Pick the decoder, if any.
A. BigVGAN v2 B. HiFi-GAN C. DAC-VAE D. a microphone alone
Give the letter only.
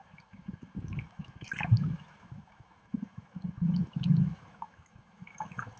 C